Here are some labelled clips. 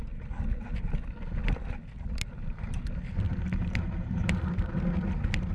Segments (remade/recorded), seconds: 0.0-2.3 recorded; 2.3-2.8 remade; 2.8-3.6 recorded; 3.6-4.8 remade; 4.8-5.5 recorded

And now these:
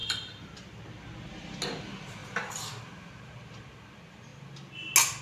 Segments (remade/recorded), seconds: 0.0-0.8 remade; 0.8-2.2 recorded; 2.2-2.8 remade; 2.8-5.2 recorded

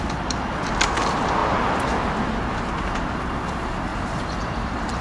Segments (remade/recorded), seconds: 0.0-3.9 recorded; 3.9-5.0 remade

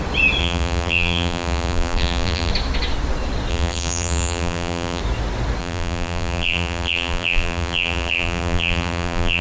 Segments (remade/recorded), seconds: 0.0-0.4 recorded; 0.4-2.5 remade; 2.5-3.5 recorded; 3.5-5.0 remade; 5.0-5.6 recorded; 5.6-9.4 remade

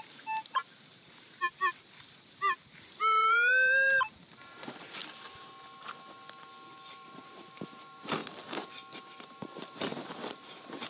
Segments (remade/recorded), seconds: 0.0-5.0 remade; 5.0-6.9 recorded; 6.9-8.2 remade; 8.2-9.3 recorded; 9.3-10.9 remade